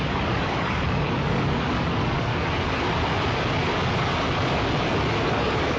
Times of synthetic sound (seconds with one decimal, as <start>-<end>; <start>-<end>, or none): 0.0-2.3; 5.3-5.8

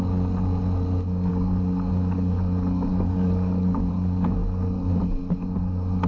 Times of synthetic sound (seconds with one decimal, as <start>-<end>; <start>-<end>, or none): 1.3-1.9; 2.9-3.9